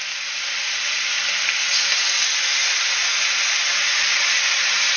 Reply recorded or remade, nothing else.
recorded